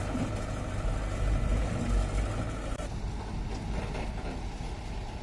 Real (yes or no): yes